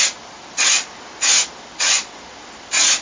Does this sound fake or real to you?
real